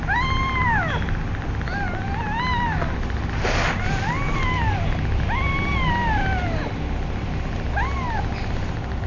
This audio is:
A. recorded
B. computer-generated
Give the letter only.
A